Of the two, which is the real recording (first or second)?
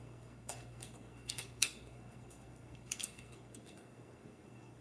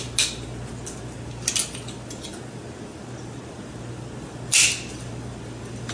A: second